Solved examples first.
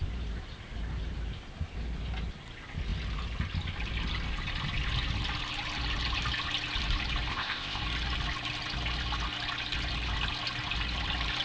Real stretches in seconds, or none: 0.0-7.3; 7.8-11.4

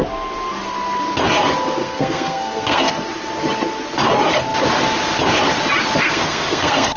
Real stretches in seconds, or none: 0.0-1.8; 2.9-6.0

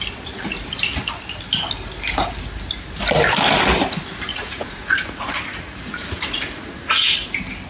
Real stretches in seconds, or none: 0.0-4.3; 7.0-7.7

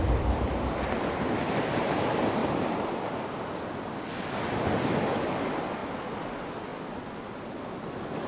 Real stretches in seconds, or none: 0.0-8.3

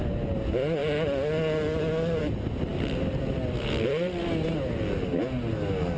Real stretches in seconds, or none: 0.0-6.0

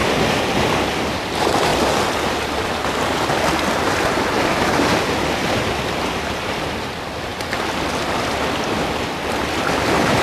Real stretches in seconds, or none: 1.7-2.6

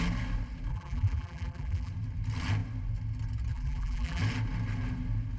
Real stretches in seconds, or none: 0.0-0.7; 1.9-3.5; 4.2-5.4

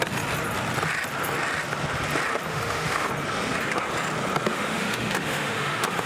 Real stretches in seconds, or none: 0.0-2.5; 3.1-4.5